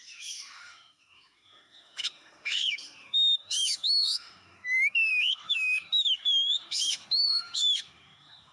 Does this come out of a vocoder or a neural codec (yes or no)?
yes